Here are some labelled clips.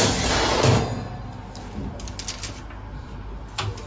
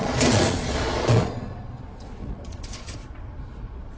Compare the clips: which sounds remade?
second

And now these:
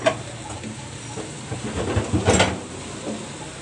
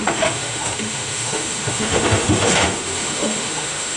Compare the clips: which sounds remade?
second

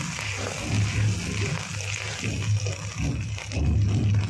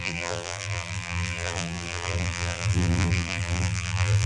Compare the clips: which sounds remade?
second